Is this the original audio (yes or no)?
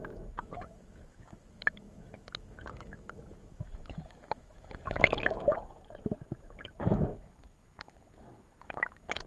no